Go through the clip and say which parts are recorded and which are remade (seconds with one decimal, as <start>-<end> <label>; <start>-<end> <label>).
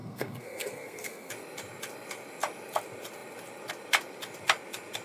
0.0-1.3 remade; 1.3-5.0 recorded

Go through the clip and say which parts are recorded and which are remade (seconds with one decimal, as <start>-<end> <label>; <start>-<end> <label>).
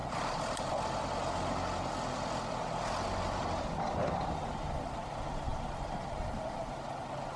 0.0-0.7 remade; 0.7-5.5 recorded; 5.5-6.7 remade; 6.7-7.4 recorded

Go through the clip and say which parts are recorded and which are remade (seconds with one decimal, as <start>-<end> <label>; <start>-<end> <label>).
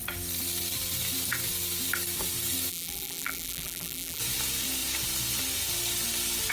0.0-2.7 recorded; 2.7-4.2 remade; 4.2-6.5 recorded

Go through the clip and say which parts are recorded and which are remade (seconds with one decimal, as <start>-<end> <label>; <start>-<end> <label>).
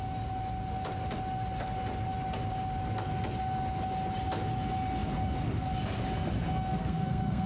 0.0-6.7 recorded; 6.7-7.5 remade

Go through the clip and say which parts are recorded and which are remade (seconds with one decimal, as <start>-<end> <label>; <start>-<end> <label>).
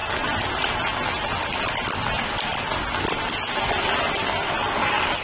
0.0-5.2 recorded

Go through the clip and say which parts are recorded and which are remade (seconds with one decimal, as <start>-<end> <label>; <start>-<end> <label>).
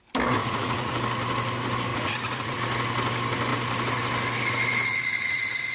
0.0-0.4 recorded; 0.4-0.9 remade; 0.9-1.9 recorded; 1.9-2.6 remade; 2.6-4.9 recorded; 4.9-5.7 remade